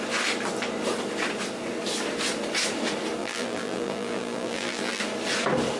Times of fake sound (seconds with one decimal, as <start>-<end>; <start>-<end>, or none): 3.2-5.0